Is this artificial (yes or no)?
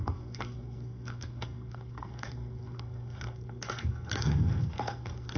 yes